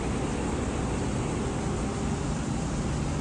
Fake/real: real